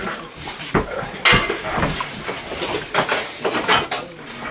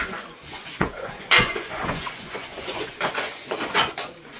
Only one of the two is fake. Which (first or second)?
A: second